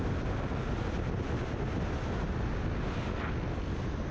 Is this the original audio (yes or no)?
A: yes